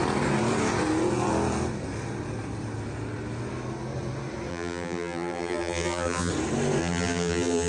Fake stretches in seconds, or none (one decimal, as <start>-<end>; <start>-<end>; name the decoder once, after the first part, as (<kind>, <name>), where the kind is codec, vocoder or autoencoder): 4.5-6.3 (vocoder, BigVGAN v2); 6.8-7.7